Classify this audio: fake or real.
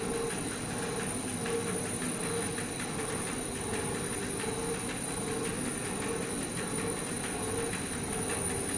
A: real